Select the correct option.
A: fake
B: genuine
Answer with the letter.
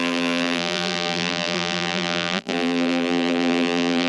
A